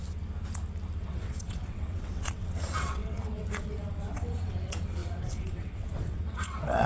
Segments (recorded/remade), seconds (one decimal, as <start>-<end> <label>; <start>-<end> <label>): 0.0-1.0 recorded; 1.0-6.9 remade